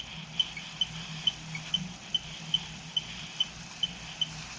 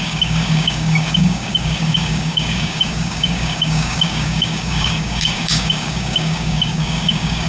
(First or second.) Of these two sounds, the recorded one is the first